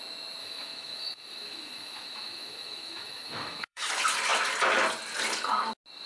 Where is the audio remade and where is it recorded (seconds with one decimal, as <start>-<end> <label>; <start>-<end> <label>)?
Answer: 0.0-0.4 recorded; 0.4-3.9 remade; 3.9-6.1 recorded